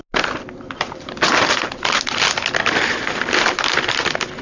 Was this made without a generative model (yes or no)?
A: yes